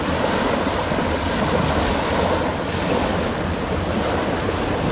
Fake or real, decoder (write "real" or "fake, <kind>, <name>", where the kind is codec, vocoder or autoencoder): real